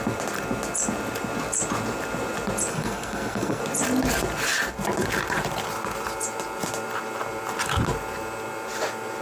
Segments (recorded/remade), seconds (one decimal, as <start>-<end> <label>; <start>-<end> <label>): 0.0-2.7 recorded; 2.7-3.6 remade; 3.6-9.2 recorded